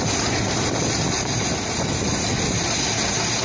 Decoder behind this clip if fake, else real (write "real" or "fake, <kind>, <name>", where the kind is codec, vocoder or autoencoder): real